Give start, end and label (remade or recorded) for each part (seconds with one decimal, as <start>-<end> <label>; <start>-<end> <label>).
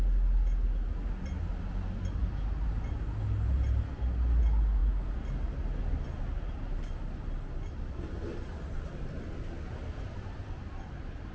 0.0-11.3 recorded